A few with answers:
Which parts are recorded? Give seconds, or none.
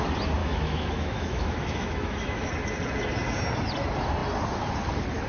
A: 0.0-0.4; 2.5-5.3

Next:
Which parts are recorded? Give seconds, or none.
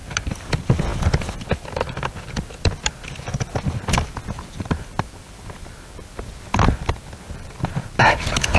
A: none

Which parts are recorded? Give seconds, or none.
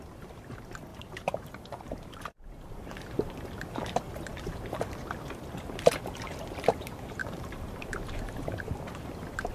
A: 0.0-0.9; 2.2-7.2; 8.6-9.5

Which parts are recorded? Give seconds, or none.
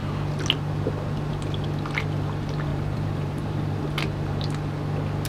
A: 0.0-2.7; 3.8-5.3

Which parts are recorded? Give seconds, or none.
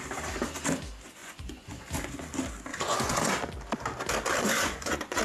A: 0.0-1.2; 1.9-2.7; 3.3-4.4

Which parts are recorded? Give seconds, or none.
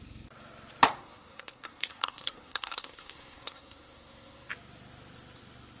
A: 0.0-1.0; 4.5-5.8